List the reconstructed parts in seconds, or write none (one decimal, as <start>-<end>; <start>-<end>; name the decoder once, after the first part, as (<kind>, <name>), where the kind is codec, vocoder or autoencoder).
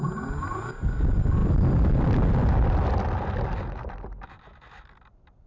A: none